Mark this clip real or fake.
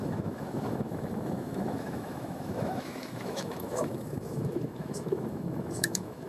fake